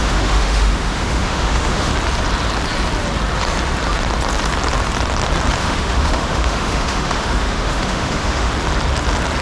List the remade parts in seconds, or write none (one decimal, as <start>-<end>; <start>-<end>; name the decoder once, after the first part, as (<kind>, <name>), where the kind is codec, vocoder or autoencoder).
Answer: 0.0-1.9 (autoencoder, DAC-VAE); 5.6-8.5